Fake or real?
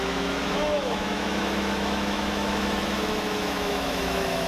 fake